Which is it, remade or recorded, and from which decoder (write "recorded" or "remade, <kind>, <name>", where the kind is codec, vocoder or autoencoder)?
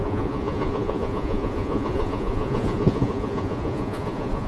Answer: remade, vocoder, Vocos